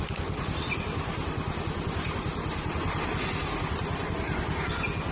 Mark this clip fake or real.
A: real